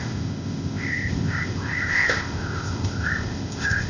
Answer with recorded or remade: remade